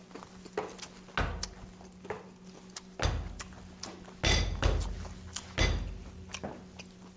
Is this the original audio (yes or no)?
yes